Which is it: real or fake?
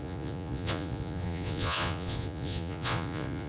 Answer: fake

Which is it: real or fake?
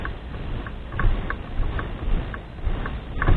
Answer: real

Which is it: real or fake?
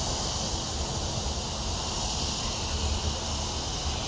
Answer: real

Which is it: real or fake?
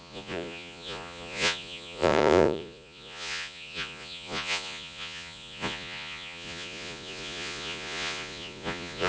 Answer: fake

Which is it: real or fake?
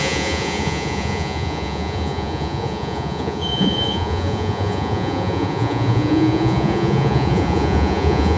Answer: fake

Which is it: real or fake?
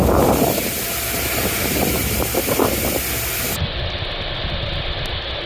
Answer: real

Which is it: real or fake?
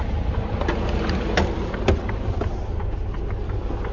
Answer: real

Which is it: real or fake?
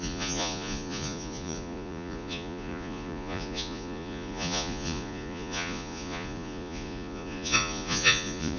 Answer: fake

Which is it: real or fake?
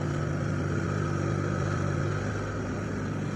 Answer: real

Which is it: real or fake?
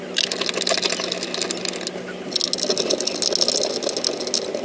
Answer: real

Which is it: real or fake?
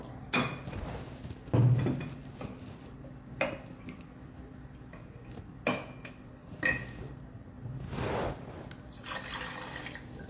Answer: real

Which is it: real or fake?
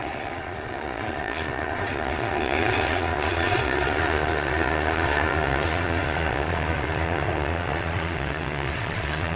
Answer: fake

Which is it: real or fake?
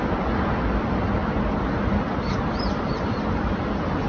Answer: real